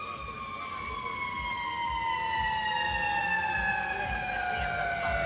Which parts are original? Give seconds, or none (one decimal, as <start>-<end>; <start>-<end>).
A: 0.0-3.2; 3.7-5.3